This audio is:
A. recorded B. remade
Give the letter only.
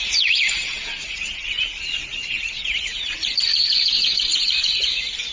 B